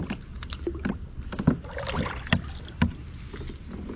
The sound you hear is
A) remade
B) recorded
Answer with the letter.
B